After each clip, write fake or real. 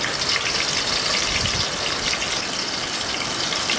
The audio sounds real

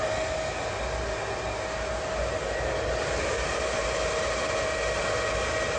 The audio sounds real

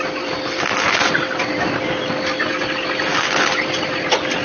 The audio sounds real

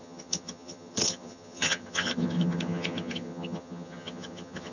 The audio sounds fake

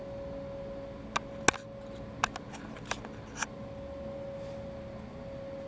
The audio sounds real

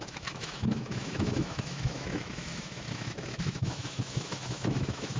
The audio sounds fake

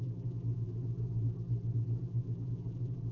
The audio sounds fake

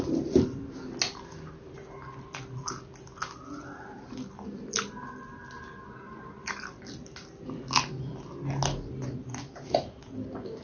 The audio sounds real